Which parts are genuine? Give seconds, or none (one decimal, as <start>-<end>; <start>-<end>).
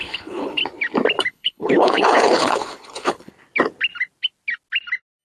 0.6-1.3; 3.3-5.2